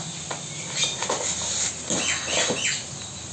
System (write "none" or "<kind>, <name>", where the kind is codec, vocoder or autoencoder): none